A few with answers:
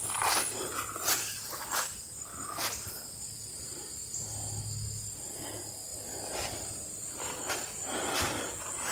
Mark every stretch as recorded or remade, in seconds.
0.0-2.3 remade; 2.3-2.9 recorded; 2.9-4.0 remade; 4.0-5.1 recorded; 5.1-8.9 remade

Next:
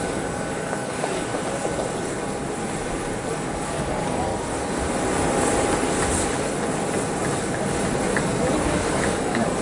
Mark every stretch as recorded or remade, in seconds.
0.0-1.3 remade; 1.3-3.4 recorded; 3.4-4.3 remade; 4.3-8.6 recorded; 8.6-9.6 remade

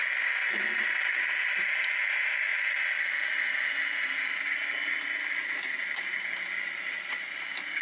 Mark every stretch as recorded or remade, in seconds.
0.0-7.8 recorded

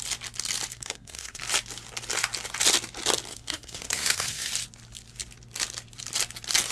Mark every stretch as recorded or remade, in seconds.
0.0-0.7 recorded; 0.7-1.4 remade; 1.4-3.3 recorded; 3.3-4.5 remade; 4.5-6.7 recorded